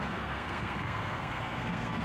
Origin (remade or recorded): remade